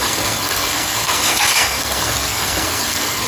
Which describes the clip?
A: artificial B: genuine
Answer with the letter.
A